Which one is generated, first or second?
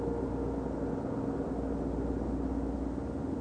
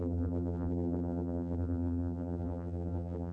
second